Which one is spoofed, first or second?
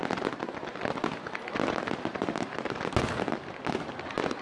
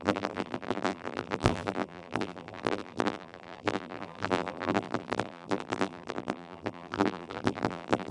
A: second